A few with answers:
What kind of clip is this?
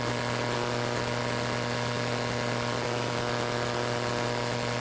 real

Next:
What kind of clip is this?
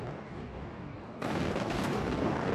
fake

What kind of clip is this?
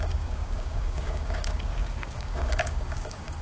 fake